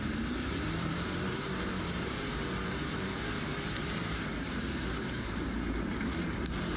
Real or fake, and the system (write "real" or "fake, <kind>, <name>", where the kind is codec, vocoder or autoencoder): fake, vocoder, BigVGAN v2